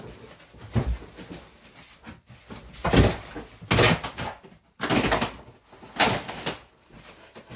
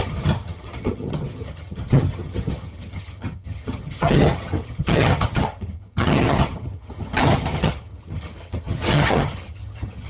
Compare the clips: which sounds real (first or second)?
first